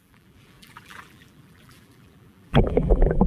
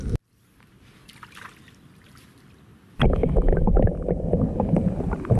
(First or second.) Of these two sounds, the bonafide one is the second